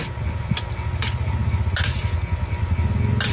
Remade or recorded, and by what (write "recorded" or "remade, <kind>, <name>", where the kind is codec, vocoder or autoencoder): recorded